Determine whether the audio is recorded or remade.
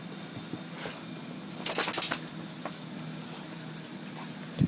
recorded